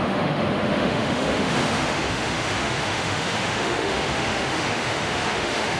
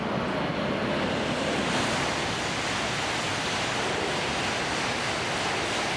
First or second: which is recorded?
second